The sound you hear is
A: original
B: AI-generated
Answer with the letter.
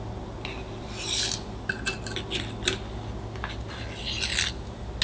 A